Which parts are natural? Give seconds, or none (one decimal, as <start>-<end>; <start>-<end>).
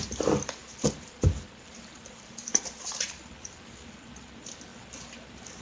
0.0-0.6; 4.0-4.7